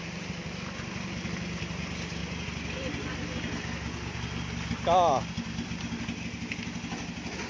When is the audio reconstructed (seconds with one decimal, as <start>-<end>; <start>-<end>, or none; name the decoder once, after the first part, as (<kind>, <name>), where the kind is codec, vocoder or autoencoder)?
none